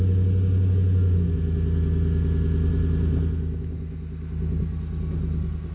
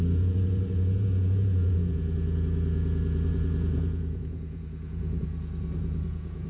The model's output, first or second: second